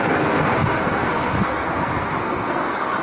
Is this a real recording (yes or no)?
no